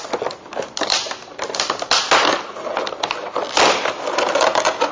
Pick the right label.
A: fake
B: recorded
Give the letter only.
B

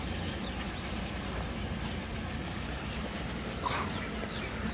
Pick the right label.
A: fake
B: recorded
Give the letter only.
B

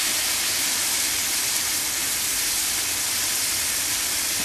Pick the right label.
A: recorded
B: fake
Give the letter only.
A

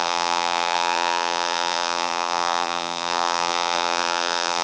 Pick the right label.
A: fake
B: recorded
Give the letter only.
A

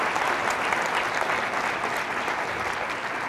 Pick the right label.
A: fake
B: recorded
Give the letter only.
B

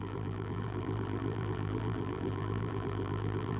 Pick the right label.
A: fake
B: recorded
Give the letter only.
A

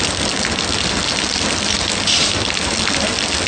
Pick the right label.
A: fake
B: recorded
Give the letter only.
B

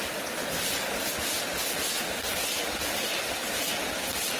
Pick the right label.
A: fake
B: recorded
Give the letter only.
B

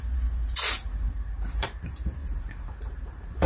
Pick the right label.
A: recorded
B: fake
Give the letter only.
B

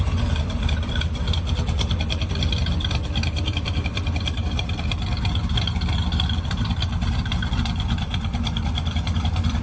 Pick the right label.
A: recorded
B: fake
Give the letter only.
B